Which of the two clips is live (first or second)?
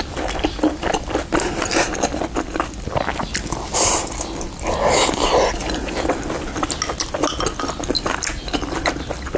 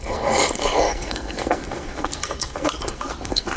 first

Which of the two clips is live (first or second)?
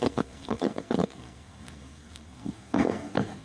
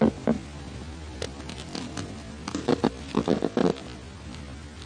second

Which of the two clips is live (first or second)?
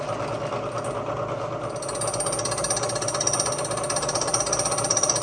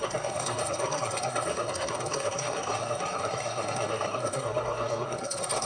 first